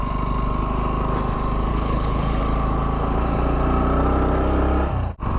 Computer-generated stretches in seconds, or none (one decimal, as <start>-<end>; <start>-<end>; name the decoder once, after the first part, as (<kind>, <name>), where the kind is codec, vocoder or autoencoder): 1.7-2.4 (codec, HILCodec)